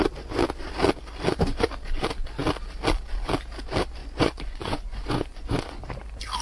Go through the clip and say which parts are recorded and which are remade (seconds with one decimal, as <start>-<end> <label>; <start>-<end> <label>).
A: 0.0-4.0 recorded; 4.0-5.8 remade; 5.8-6.4 recorded